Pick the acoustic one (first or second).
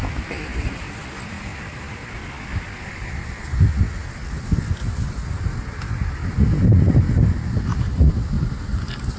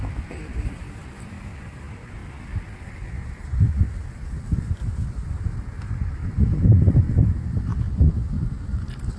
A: first